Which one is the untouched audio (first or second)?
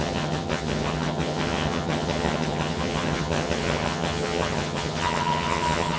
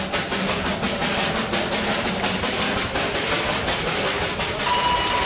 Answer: second